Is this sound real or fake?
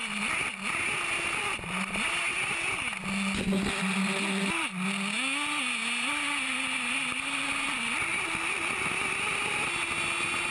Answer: real